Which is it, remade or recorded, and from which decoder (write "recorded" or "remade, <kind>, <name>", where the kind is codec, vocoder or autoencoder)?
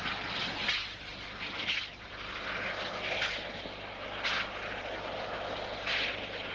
recorded